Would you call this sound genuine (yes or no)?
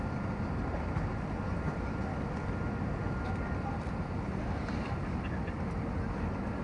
yes